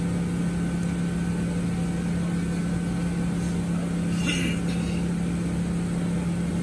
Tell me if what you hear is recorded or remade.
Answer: recorded